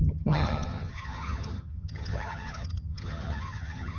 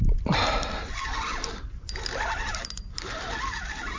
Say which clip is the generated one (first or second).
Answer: first